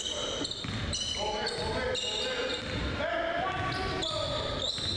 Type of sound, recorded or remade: recorded